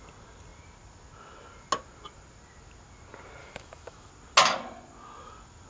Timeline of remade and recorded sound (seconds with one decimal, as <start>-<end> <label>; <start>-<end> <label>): 0.0-3.4 recorded; 3.4-4.1 remade; 4.1-5.7 recorded